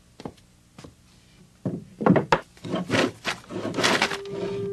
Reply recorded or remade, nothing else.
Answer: recorded